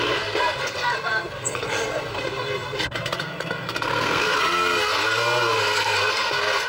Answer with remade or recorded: remade